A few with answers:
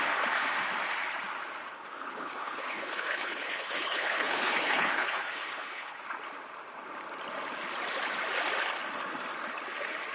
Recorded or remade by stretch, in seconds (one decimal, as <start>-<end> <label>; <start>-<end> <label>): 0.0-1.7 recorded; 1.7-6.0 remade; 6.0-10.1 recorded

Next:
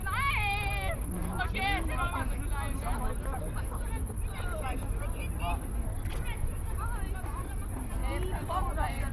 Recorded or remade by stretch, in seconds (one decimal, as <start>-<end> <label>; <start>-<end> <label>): 0.0-6.1 recorded; 6.1-6.7 remade; 6.7-9.1 recorded

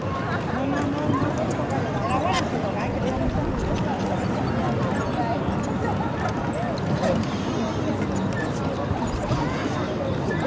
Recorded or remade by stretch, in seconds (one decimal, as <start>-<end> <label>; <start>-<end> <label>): 0.0-10.5 recorded

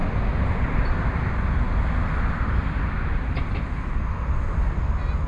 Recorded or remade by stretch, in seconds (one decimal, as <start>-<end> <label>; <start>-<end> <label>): 0.0-5.3 recorded

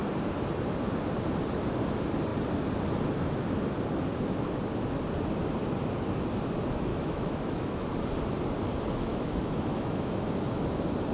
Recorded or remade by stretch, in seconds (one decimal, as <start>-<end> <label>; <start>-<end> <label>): 0.0-6.9 recorded; 6.9-7.8 remade; 7.8-9.1 recorded; 9.1-10.1 remade; 10.1-11.1 recorded

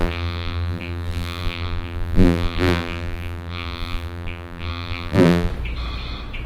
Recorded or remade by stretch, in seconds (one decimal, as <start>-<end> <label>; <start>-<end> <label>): 0.0-5.5 remade; 5.5-6.5 recorded

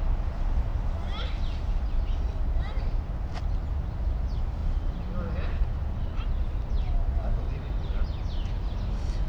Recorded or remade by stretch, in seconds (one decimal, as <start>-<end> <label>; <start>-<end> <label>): 0.0-9.3 recorded